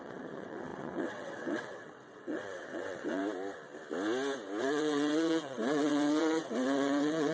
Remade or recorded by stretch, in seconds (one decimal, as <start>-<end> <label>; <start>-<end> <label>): 0.0-3.2 remade; 3.2-4.6 recorded; 4.6-7.3 remade